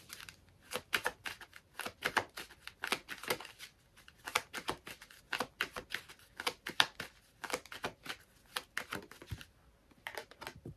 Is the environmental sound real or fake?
real